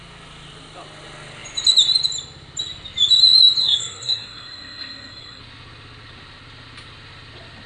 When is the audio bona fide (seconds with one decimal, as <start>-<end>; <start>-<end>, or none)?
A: 0.0-3.6; 5.4-7.7